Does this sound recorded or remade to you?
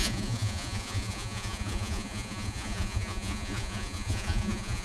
remade